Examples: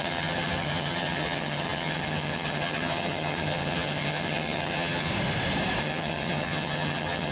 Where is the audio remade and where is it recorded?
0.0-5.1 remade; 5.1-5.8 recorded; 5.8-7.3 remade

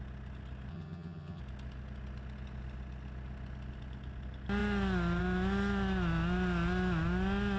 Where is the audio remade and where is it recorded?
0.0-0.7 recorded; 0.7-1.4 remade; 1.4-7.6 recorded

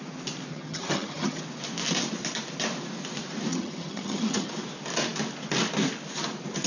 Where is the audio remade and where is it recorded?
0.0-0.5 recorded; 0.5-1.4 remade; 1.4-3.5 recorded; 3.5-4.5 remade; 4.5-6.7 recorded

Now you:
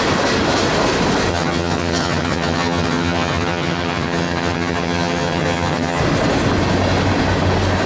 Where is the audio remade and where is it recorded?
0.0-1.3 recorded; 1.3-6.0 remade; 6.0-7.9 recorded

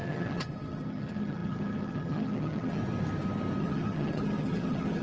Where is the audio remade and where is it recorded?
0.0-2.8 remade; 2.8-3.6 recorded; 3.6-5.0 remade

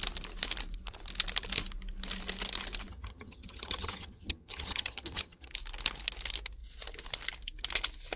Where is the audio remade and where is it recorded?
0.0-2.9 recorded; 2.9-5.5 remade; 5.5-8.2 recorded